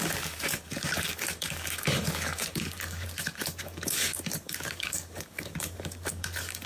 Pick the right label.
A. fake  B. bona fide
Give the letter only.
A